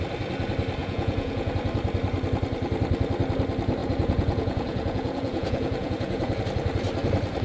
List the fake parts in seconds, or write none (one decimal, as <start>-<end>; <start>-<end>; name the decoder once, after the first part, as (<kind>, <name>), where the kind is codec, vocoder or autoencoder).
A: 0.8-1.5 (vocoder, Vocos); 3.8-6.4

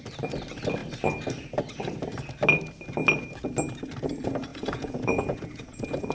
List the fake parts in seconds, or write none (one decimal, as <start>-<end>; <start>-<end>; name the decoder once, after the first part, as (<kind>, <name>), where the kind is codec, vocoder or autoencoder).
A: 4.5-6.1 (vocoder, Vocos)

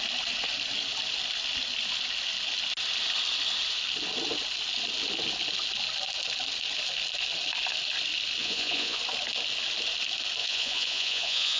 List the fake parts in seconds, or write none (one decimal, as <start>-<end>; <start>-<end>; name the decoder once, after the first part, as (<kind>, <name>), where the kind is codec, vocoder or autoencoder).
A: 8.4-9.0 (vocoder, Vocos); 10.4-11.6

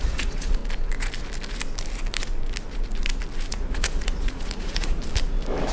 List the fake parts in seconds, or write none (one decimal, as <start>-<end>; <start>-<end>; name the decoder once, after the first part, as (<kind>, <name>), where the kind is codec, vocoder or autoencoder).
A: 0.0-0.6 (vocoder, Vocos); 3.5-5.0

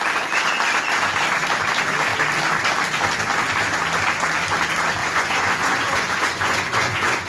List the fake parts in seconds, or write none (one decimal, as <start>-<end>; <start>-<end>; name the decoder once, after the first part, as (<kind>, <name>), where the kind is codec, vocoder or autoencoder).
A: 5.0-7.3 (vocoder, Vocos)

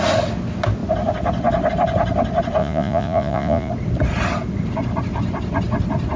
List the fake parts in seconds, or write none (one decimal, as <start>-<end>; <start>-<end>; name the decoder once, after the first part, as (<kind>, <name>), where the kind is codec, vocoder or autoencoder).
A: 2.6-3.7 (vocoder, Vocos)

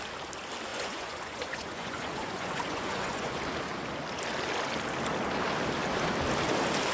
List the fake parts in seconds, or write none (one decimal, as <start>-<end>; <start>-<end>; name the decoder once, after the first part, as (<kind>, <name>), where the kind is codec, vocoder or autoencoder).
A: 0.7-3.4 (vocoder, Vocos)